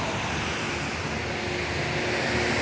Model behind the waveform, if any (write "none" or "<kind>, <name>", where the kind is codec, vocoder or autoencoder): none